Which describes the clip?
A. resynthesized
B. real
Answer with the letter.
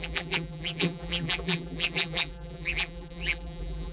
A